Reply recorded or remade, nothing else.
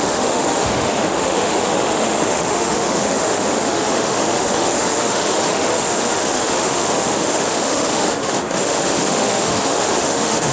remade